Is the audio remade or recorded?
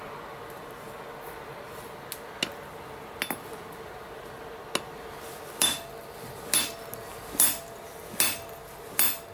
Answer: recorded